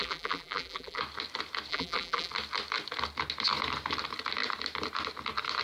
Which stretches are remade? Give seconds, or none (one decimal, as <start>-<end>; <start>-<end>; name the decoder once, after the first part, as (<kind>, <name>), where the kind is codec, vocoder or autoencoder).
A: 0.0-1.0 (vocoder, BigVGAN v2); 1.7-2.3